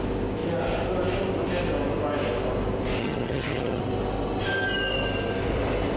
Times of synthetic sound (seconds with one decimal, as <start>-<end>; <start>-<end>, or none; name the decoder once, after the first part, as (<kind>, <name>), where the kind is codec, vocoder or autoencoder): 3.0-3.8 (vocoder, HiFi-GAN)